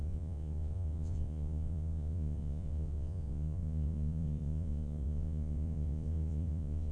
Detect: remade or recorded remade